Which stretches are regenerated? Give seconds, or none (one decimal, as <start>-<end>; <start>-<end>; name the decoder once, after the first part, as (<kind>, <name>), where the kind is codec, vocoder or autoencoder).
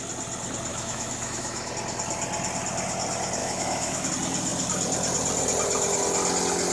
0.7-1.7 (autoencoder, DAC-VAE); 3.4-4.1